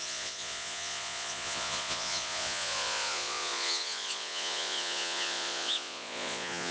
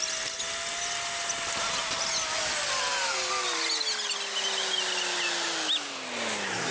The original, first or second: second